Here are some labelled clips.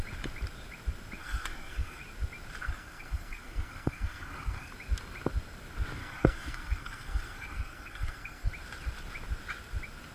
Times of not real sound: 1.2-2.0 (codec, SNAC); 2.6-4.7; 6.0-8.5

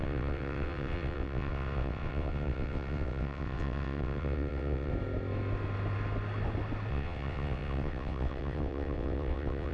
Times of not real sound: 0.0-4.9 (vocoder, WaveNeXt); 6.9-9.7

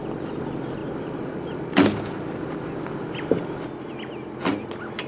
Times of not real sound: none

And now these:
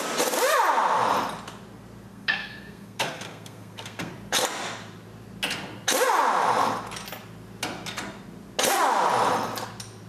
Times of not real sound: 2.1-4.1 (codec, SNAC)